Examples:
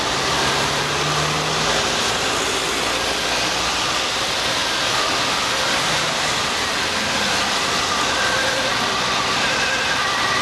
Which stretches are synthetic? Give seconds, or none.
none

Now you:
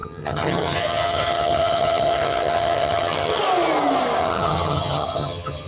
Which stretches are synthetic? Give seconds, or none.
0.0-3.4 (vocoder, HiFi-GAN); 4.2-5.7

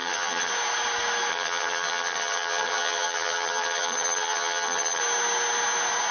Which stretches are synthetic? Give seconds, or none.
0.0-0.5 (vocoder, HiFi-GAN); 1.3-5.0

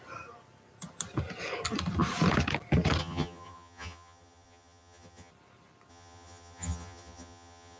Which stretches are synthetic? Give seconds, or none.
3.0-5.3 (vocoder, HiFi-GAN); 5.9-7.8

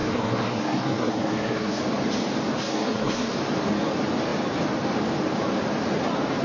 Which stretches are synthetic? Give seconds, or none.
0.0-1.8 (codec, SNAC); 2.6-3.3